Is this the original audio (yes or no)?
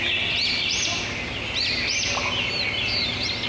yes